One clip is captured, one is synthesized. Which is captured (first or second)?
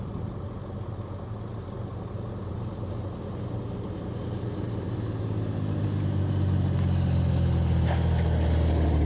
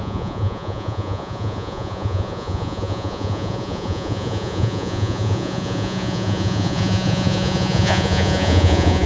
first